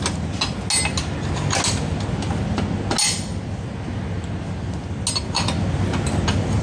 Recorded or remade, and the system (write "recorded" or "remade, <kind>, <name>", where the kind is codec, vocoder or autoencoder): recorded